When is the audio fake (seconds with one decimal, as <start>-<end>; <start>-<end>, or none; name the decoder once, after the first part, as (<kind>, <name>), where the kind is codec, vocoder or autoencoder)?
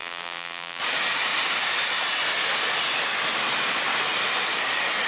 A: 0.0-0.8 (vocoder, BigVGAN v2)